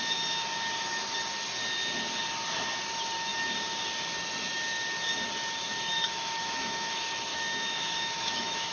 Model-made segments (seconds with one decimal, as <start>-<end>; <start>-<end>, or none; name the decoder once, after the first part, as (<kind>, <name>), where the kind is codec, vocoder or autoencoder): 5.9-6.8 (autoencoder, DAC-VAE); 7.3-8.7